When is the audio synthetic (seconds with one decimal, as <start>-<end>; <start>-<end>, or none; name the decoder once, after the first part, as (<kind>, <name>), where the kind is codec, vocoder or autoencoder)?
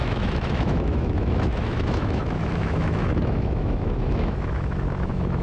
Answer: 0.0-5.4 (autoencoder, DAC-VAE)